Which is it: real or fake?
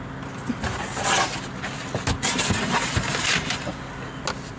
real